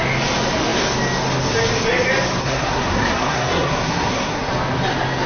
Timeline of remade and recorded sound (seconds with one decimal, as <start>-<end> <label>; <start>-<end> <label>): 0.0-2.4 recorded; 2.4-4.5 remade; 4.5-5.3 recorded